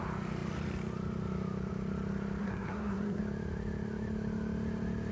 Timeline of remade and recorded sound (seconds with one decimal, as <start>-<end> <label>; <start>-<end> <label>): 0.0-2.4 recorded; 2.4-3.2 remade; 3.2-5.1 recorded